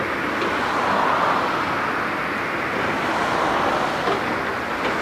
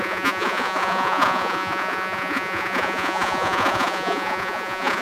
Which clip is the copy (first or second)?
second